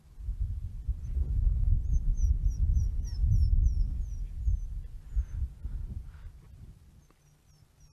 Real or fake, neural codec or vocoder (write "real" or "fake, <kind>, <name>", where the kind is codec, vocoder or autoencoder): real